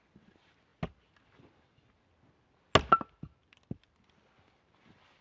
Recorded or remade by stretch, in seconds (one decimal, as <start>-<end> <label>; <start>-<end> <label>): 0.0-5.2 recorded